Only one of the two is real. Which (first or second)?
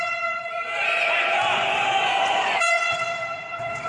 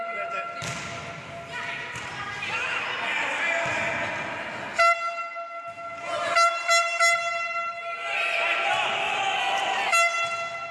second